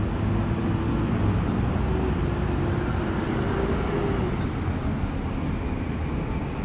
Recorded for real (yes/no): yes